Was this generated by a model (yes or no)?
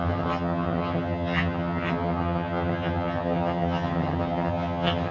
yes